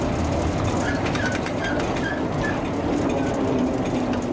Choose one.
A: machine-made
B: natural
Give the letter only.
B